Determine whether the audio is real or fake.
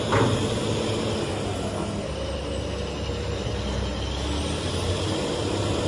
real